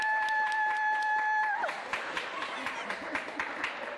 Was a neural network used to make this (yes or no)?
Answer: no